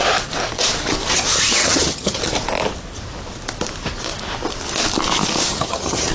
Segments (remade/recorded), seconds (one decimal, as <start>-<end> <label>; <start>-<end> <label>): 0.0-1.6 recorded; 1.6-2.2 remade; 2.2-5.5 recorded; 5.5-6.1 remade